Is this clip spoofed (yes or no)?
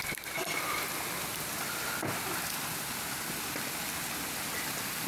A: no